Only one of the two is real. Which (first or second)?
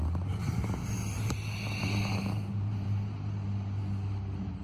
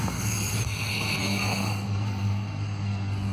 first